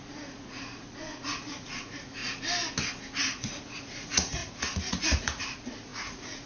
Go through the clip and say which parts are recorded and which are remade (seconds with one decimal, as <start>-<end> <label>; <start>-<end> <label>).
0.0-2.2 remade; 2.2-3.2 recorded; 3.2-6.5 remade